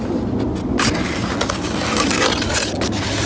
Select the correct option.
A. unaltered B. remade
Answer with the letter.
A